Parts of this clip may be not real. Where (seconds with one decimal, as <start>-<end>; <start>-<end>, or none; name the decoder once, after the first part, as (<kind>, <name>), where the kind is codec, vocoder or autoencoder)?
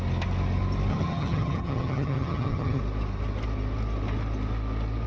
0.9-2.8 (vocoder, HiFi-GAN)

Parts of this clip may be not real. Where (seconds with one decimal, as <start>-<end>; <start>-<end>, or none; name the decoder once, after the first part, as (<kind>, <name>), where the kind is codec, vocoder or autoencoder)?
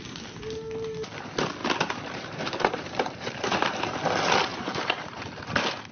1.6-4.0 (vocoder, BigVGAN v2); 4.5-5.4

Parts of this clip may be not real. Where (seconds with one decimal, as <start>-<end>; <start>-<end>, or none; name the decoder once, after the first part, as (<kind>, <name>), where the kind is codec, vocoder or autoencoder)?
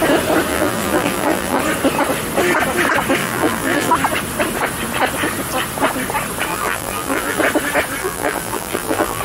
0.5-1.6 (vocoder, BigVGAN v2); 3.2-3.9; 6.5-7.4; 8.0-9.2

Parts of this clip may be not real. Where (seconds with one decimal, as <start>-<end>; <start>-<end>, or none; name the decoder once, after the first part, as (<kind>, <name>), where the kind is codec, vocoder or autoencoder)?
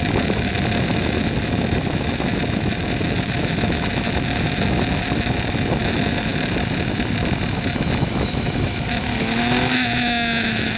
0.0-10.8 (autoencoder, DAC-VAE)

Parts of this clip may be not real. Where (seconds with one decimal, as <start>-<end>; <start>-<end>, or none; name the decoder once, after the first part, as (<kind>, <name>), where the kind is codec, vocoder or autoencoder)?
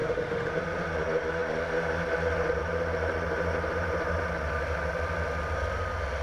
0.0-0.5 (autoencoder, DAC-VAE)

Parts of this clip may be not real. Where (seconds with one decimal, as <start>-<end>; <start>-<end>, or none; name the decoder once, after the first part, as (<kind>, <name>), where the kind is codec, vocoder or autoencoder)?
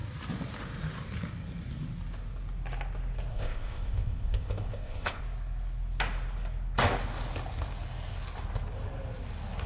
3.3-5.2 (codec, ZipCodec)